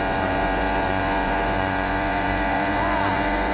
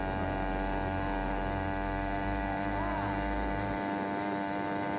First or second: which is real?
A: second